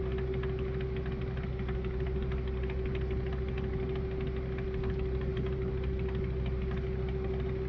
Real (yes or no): yes